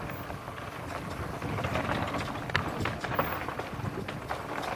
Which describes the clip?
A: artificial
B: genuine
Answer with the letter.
B